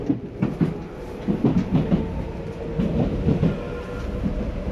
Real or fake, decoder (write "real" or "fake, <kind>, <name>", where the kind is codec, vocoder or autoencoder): real